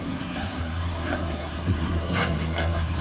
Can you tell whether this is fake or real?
fake